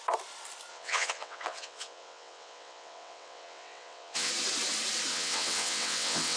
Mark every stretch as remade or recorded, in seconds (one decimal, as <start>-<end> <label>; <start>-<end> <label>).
0.0-0.7 recorded; 0.7-4.3 remade; 4.3-5.1 recorded; 5.1-6.4 remade